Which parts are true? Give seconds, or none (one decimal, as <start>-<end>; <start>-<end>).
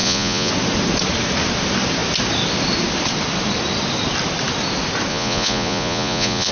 0.5-5.1